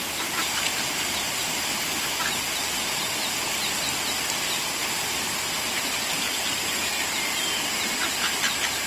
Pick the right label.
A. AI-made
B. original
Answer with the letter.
B